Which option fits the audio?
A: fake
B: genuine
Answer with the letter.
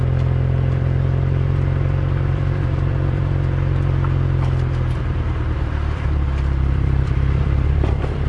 A